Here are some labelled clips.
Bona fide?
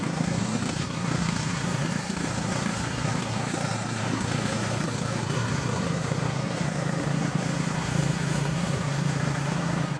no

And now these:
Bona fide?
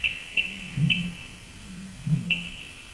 no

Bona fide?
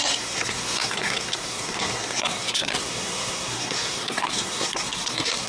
no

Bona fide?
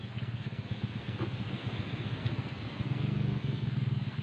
no